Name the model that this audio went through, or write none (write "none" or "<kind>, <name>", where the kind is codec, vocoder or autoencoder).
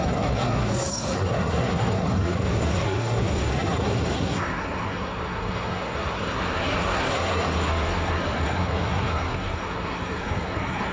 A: codec, SNAC